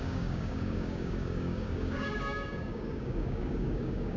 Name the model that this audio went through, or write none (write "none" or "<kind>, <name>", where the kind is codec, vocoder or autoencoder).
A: codec, DAC